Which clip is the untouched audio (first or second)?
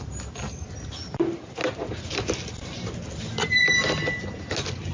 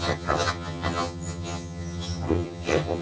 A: first